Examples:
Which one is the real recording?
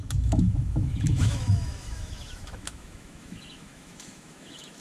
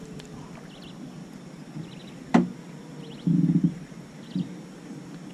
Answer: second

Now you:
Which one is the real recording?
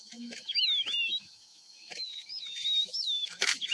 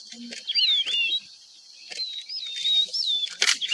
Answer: second